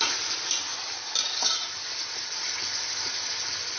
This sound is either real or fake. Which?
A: real